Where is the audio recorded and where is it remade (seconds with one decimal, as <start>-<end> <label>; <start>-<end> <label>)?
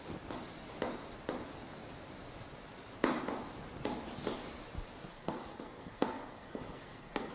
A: 0.0-5.1 recorded; 5.1-7.3 remade